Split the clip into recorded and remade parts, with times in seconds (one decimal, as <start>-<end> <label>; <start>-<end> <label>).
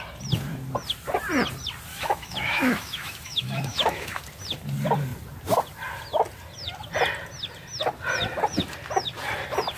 0.0-1.9 recorded; 1.9-4.2 remade; 4.2-9.8 recorded